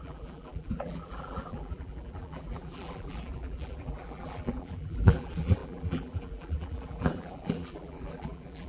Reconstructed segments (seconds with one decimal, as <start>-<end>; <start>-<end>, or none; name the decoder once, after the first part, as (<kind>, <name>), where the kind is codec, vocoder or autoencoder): 0.0-8.7 (vocoder, BigVGAN v2)